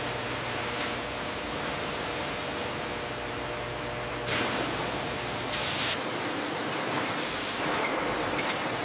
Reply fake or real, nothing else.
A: real